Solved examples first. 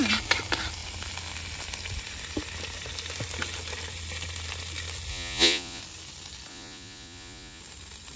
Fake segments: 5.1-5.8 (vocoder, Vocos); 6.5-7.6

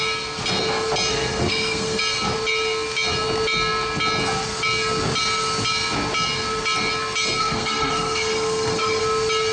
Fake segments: 1.1-2.0 (codec, SNAC); 7.4-9.0